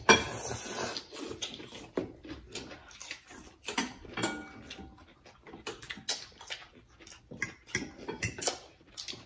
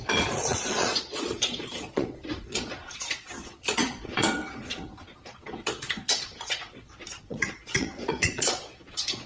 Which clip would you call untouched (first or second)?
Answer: first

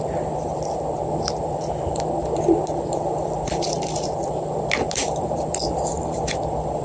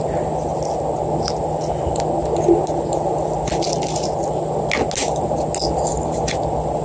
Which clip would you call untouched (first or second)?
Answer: second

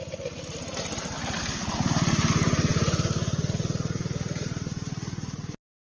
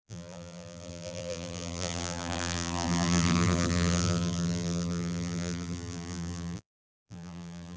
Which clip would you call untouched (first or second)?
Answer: first